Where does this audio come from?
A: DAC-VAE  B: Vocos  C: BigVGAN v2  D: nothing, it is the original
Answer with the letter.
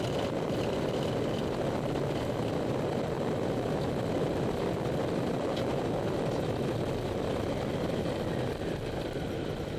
C